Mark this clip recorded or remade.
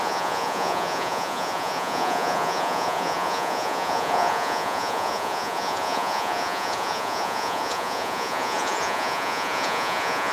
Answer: remade